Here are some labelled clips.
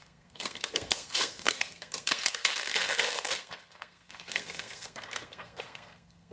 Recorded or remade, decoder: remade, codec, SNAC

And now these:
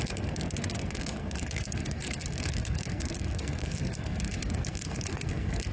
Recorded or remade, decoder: remade, codec, SNAC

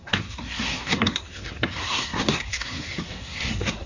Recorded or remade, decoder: remade, codec, SNAC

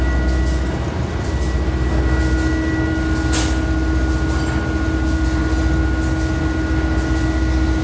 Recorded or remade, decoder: recorded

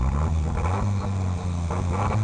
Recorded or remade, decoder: recorded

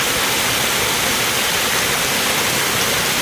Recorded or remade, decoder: recorded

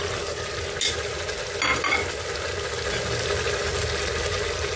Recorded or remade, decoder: recorded